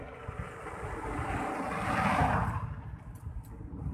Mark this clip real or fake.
real